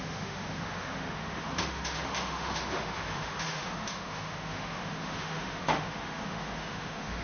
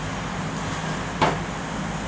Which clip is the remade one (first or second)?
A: first